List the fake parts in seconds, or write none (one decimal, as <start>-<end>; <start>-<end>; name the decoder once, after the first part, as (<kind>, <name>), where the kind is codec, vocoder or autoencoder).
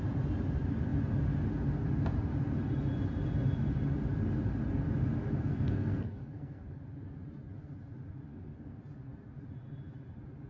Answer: 5.5-6.8 (codec, SNAC); 8.3-8.8